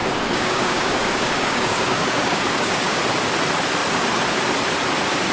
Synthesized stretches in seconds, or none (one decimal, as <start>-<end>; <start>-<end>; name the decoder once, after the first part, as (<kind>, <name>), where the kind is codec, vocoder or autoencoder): 0.0-3.0 (codec, DAC)